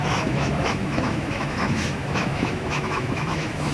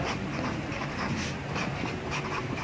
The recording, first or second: second